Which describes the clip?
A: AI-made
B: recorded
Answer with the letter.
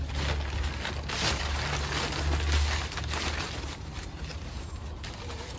B